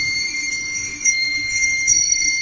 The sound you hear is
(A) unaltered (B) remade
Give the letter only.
B